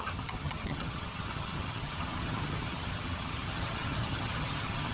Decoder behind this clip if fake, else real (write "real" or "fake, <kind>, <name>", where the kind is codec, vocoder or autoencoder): fake, vocoder, HiFi-GAN